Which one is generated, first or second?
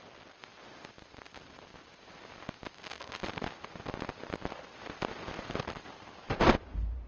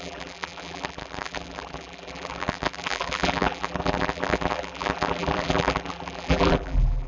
second